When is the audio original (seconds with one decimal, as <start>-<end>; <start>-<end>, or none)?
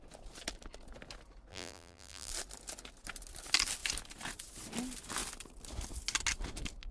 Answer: 0.0-1.5; 2.3-6.9